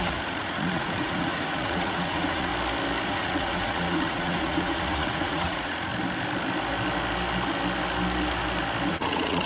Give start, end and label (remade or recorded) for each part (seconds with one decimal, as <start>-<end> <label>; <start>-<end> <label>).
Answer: 0.0-2.5 remade; 2.5-3.1 recorded; 3.1-5.9 remade; 5.9-8.9 recorded; 8.9-9.5 remade

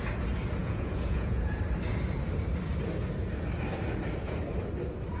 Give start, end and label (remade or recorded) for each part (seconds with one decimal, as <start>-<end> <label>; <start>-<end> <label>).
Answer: 0.0-0.6 recorded; 0.6-1.6 remade; 1.6-5.2 recorded

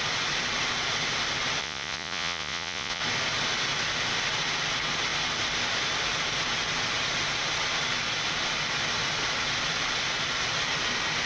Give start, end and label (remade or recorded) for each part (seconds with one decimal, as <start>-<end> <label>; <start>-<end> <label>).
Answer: 0.0-1.6 recorded; 1.6-3.0 remade; 3.0-11.3 recorded

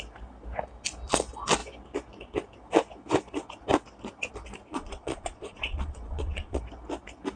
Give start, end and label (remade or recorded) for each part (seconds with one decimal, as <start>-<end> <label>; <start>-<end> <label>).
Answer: 0.0-4.7 recorded; 4.7-6.6 remade; 6.6-7.4 recorded

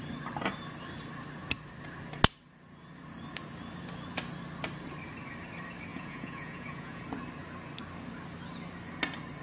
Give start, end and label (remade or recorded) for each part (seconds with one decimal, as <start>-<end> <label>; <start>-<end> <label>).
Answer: 0.0-5.9 recorded; 5.9-7.0 remade; 7.0-9.4 recorded

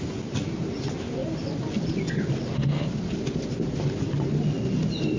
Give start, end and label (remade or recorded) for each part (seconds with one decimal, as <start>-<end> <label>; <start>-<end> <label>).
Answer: 0.0-5.2 recorded

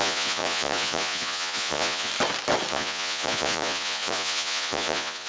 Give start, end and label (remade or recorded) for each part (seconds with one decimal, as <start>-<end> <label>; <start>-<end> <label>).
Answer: 0.0-2.1 remade; 2.1-2.7 recorded; 2.7-5.3 remade

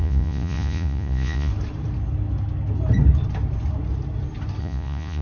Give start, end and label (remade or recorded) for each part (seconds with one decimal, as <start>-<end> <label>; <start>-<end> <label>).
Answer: 0.0-1.5 remade; 1.5-4.6 recorded; 4.6-5.2 remade